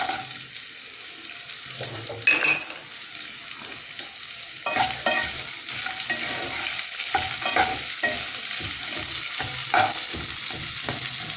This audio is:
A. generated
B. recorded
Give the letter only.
B